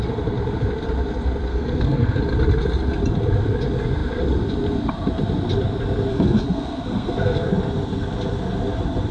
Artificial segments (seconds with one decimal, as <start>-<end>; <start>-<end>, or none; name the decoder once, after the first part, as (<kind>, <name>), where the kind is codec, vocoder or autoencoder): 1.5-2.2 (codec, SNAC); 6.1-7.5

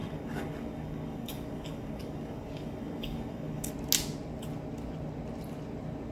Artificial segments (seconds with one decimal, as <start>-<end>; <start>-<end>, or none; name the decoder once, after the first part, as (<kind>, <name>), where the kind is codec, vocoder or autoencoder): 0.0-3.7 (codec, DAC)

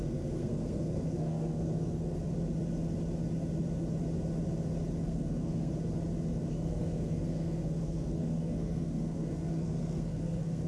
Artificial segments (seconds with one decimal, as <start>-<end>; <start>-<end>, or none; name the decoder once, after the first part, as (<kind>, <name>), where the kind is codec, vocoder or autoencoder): 0.0-2.2 (codec, SNAC); 5.0-5.7; 6.5-10.7

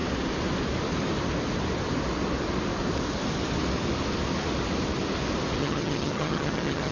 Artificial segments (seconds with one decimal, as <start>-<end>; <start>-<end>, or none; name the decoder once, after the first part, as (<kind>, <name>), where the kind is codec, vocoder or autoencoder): 5.6-6.9 (vocoder, HiFi-GAN)